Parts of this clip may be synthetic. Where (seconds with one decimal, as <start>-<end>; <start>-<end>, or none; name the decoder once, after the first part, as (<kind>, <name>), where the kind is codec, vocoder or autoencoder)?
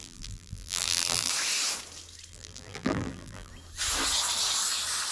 0.0-1.3 (vocoder, BigVGAN v2); 2.3-3.5